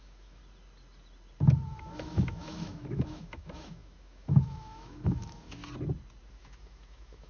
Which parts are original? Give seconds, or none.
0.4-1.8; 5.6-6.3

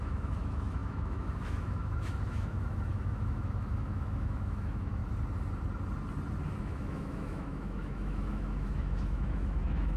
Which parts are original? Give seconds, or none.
5.0-6.6

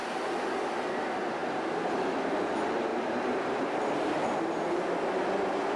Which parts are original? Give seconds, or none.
0.0-0.9

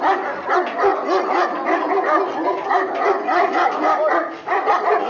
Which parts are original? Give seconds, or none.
0.0-5.1

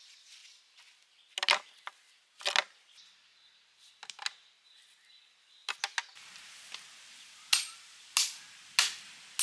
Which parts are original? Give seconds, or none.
0.0-9.4